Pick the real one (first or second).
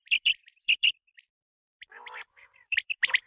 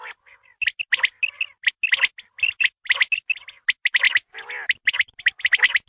second